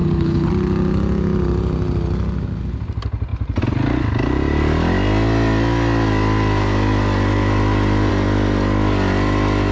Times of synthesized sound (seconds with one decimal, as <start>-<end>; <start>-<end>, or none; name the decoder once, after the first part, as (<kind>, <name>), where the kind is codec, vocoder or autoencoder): 0.0-0.5 (codec, HILCodec)